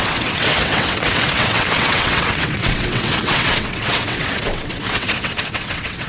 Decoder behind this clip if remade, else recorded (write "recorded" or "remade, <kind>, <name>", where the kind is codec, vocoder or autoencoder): remade, vocoder, WaveNeXt